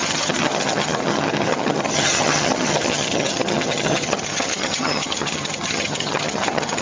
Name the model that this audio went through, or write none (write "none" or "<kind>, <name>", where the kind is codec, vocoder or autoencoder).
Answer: vocoder, HiFi-GAN